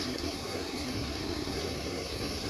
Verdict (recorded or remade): remade